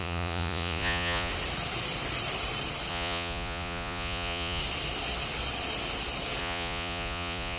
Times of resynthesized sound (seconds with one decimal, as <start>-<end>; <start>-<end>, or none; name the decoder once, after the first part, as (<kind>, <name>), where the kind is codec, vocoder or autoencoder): 0.0-1.3 (vocoder, Vocos); 2.9-4.6; 6.4-7.6